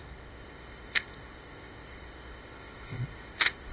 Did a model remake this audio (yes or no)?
yes